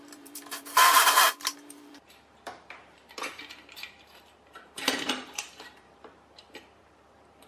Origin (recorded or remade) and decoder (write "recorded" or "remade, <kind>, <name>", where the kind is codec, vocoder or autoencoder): remade, vocoder, BigVGAN v2